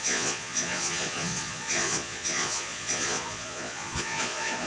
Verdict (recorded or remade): remade